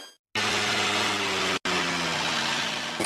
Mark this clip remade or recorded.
recorded